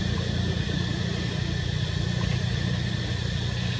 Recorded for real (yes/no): yes